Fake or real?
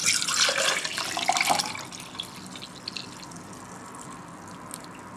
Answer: real